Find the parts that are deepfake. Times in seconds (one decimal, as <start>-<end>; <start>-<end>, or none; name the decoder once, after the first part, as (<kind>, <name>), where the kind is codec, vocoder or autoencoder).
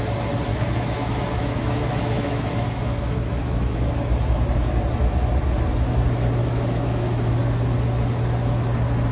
0.5-4.7 (autoencoder, DAC-VAE); 6.4-7.3